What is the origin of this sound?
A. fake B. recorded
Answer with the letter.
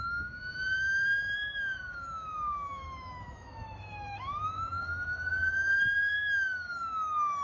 A